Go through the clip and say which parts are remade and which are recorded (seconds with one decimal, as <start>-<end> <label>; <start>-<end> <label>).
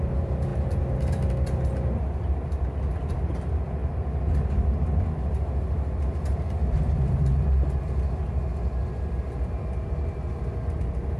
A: 0.0-11.2 recorded